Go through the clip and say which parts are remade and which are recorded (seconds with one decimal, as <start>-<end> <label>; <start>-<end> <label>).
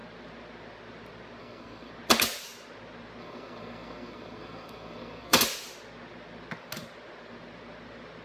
0.0-1.4 recorded; 1.4-1.9 remade; 1.9-3.2 recorded; 3.2-5.4 remade; 5.4-8.2 recorded